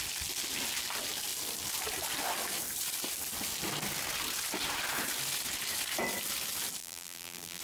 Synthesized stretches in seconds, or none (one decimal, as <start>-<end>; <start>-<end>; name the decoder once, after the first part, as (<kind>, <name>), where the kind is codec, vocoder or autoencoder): 6.8-7.6 (vocoder, BigVGAN v2)